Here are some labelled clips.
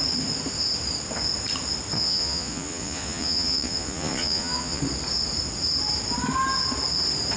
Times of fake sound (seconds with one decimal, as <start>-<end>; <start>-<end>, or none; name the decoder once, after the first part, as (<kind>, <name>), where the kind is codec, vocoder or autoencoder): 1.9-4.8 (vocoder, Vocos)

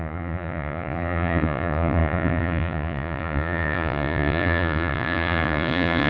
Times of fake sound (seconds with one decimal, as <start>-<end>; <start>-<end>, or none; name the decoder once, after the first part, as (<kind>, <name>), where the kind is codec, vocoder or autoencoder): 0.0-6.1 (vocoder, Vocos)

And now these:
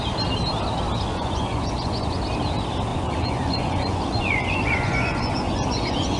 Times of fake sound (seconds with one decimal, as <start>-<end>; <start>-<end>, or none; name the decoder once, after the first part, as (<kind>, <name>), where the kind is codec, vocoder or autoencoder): 1.1-2.2 (vocoder, Vocos); 2.9-6.2